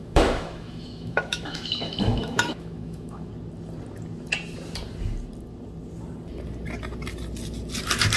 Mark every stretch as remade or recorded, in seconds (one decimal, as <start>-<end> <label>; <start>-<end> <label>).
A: 0.0-3.3 remade; 3.3-8.2 recorded